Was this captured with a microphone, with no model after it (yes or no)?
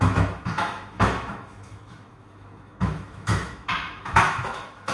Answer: no